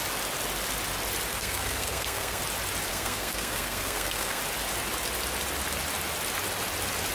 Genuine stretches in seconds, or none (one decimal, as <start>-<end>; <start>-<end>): 0.0-1.3; 2.4-2.9; 4.4-7.1